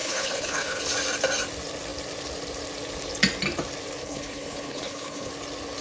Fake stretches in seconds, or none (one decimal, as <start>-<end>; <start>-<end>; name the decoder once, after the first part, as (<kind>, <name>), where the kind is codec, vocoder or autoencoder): 0.0-0.8 (codec, HILCodec); 4.0-5.3